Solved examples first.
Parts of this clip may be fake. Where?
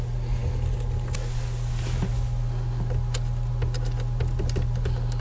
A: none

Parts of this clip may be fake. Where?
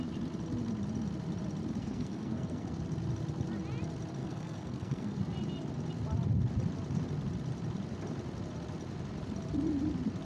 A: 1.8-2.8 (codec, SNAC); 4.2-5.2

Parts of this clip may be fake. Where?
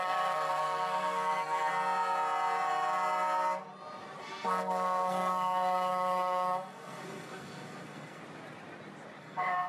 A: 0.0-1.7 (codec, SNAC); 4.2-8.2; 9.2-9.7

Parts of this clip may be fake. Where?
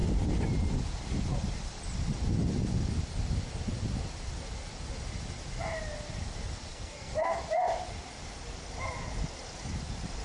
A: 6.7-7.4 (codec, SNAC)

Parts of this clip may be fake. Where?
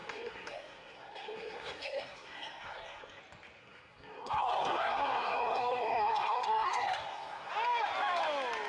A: 0.0-3.2 (codec, SNAC); 3.6-7.5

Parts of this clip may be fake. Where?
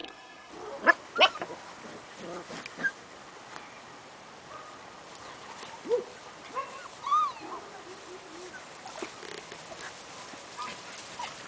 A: 0.0-0.5 (codec, SNAC)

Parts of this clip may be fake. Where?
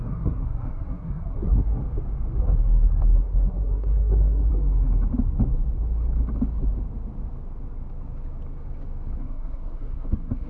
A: 0.0-1.8 (codec, SNAC); 2.4-4.5; 9.2-10.5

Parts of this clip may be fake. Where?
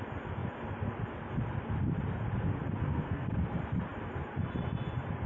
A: 2.8-3.3 (codec, SNAC)